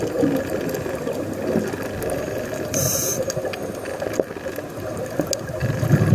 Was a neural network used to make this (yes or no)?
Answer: no